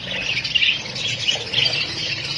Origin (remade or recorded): recorded